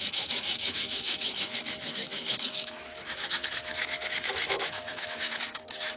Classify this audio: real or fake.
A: fake